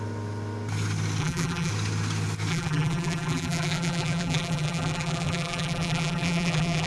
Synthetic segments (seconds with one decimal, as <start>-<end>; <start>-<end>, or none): 1.2-1.7; 2.5-6.9